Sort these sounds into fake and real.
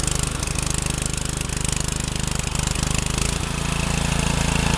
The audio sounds real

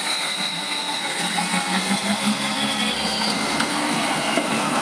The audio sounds fake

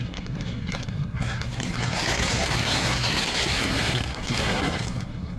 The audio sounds fake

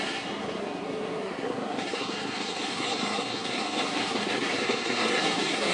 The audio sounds fake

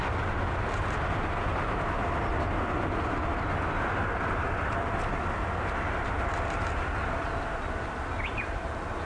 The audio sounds real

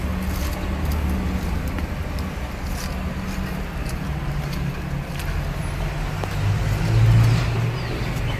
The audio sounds real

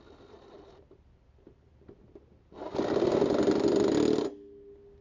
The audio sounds real